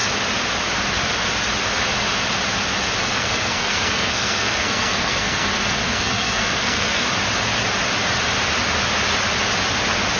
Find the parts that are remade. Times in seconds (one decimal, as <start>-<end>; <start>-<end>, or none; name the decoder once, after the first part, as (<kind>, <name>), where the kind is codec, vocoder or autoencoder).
3.0-7.0 (codec, SNAC)

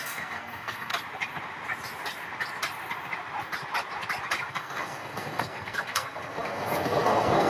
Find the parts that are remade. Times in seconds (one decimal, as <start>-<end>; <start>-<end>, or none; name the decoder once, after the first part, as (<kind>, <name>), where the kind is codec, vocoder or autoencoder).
0.0-0.9 (codec, SNAC); 4.5-7.5

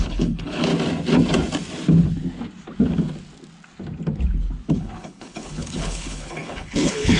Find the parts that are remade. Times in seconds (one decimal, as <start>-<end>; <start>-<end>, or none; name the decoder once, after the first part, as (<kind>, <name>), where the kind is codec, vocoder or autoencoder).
0.0-0.7 (codec, HILCodec); 4.7-7.2

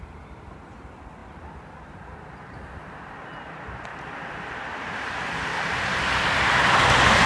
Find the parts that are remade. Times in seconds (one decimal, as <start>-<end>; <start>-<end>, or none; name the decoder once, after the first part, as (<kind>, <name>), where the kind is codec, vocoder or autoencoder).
1.2-2.0 (vocoder, BigVGAN v2); 3.9-7.3

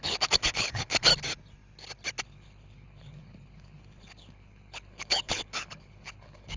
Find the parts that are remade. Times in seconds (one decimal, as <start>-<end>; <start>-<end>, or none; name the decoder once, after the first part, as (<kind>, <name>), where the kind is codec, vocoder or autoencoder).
0.0-1.1 (codec, HILCodec); 2.2-6.6